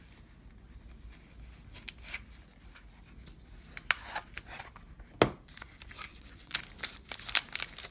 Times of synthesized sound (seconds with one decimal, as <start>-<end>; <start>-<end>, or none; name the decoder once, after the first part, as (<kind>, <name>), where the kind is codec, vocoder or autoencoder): 6.1-6.6 (vocoder, Vocos)